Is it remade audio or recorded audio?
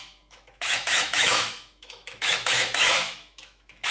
remade